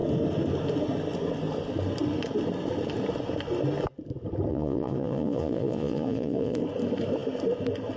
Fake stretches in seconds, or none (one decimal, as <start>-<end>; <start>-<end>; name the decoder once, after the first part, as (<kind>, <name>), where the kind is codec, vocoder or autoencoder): 4.5-6.6 (vocoder, Vocos)